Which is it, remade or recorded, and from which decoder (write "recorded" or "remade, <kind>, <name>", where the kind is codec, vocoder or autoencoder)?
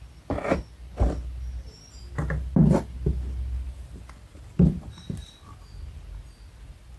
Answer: recorded